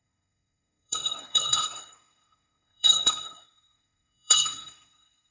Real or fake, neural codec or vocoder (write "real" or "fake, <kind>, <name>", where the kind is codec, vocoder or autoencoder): fake, codec, SNAC